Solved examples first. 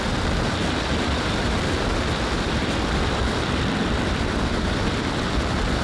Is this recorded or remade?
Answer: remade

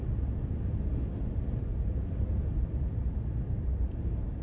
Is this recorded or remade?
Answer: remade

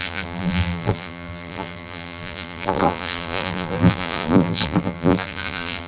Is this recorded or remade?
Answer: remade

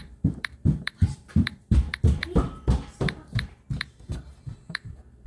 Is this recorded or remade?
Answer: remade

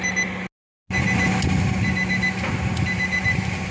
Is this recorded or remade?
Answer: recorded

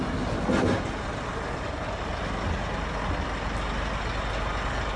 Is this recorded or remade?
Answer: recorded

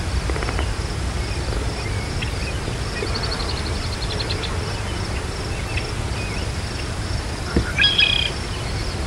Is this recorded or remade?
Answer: recorded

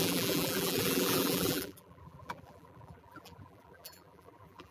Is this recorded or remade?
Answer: remade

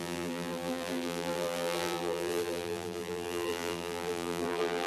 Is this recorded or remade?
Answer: remade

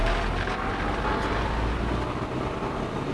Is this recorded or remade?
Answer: recorded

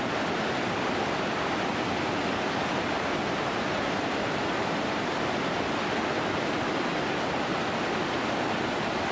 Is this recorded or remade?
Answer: recorded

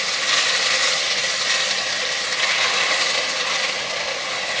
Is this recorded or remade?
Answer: recorded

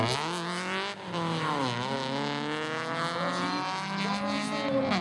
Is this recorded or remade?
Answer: recorded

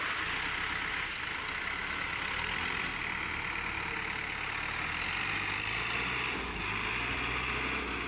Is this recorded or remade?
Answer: recorded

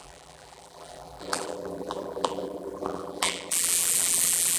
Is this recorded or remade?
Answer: remade